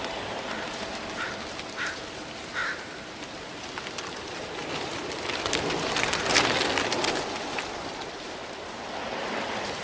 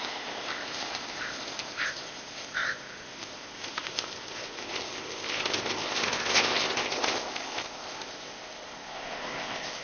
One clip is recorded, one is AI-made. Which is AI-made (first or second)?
second